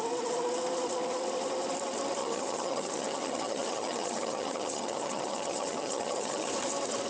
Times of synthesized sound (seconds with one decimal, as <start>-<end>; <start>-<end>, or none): 2.2-6.5